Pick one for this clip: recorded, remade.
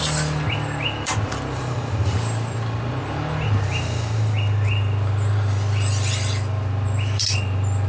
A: remade